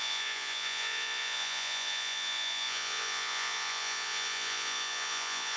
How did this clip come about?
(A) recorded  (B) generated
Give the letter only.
B